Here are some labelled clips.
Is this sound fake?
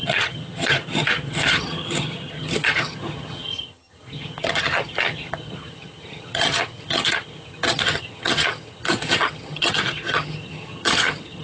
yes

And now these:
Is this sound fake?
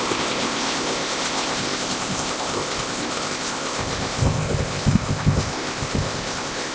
yes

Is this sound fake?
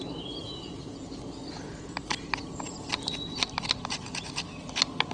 no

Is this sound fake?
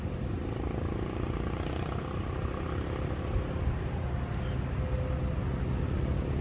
no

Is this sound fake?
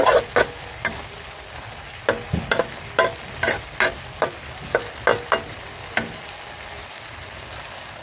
no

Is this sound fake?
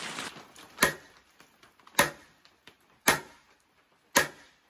no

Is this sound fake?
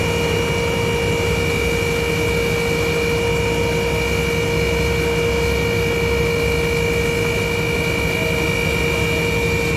no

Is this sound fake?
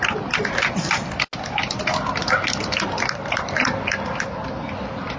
no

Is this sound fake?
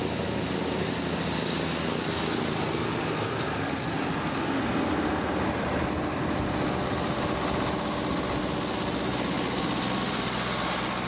no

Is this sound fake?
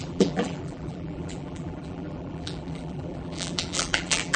yes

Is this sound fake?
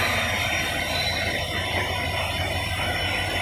no